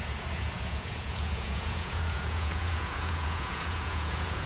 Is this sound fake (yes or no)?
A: yes